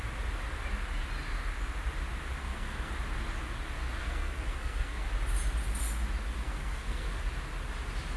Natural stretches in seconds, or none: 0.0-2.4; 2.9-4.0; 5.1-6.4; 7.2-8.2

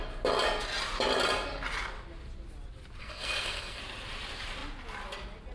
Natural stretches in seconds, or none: 0.0-3.0; 3.8-5.5

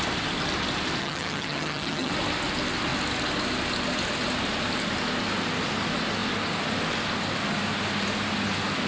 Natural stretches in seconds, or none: 0.0-1.0; 2.1-8.9

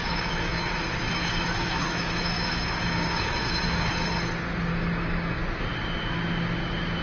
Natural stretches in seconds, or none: 0.7-1.2; 3.9-4.7; 5.4-7.0

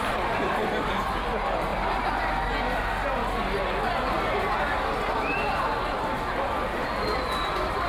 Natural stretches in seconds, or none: 0.0-7.9

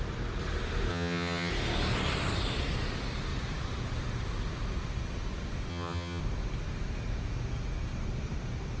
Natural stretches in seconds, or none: 0.0-0.9; 1.5-5.7; 6.2-8.8